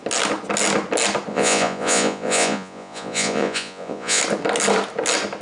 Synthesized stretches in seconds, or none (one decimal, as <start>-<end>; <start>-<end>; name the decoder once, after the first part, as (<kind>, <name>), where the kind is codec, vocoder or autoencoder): 1.3-4.2 (vocoder, Vocos)